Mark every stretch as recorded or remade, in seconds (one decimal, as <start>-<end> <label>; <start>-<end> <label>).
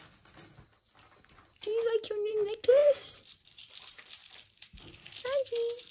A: 0.0-2.8 recorded; 2.8-4.0 remade; 4.0-5.9 recorded